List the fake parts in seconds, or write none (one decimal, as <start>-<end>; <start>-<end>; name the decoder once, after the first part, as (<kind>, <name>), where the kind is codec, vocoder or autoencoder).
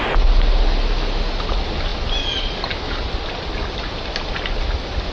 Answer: none